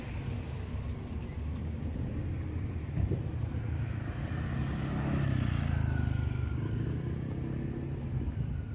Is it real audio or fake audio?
real